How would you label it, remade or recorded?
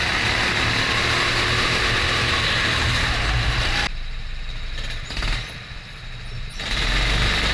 recorded